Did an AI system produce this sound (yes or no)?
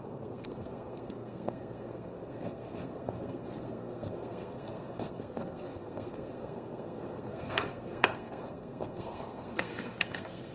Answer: yes